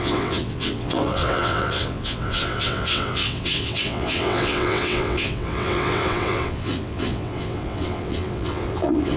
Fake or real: fake